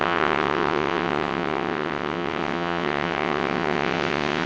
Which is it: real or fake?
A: fake